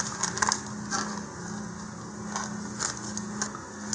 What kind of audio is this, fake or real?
real